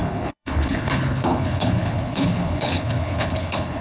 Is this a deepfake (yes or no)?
yes